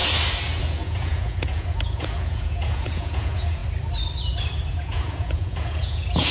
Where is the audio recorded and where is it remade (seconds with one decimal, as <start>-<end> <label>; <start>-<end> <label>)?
0.0-0.6 recorded; 0.6-3.6 remade; 3.6-4.7 recorded; 4.7-6.3 remade